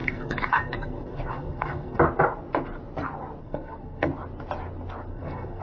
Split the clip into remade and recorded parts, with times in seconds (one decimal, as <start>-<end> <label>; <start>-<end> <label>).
0.0-2.0 remade; 2.0-3.4 recorded; 3.4-4.1 remade; 4.1-5.1 recorded; 5.1-5.6 remade